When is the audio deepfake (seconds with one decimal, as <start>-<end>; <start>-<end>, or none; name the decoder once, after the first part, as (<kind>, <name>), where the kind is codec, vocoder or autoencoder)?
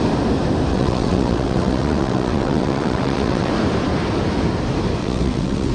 0.7-3.5 (vocoder, WaveNeXt); 5.0-5.7